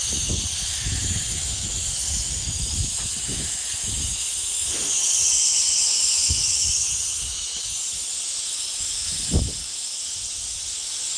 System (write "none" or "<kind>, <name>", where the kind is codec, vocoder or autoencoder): autoencoder, DAC-VAE